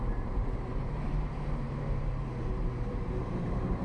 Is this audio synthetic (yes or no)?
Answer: yes